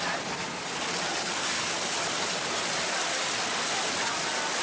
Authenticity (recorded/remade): recorded